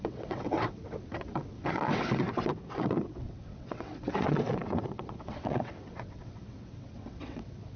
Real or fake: fake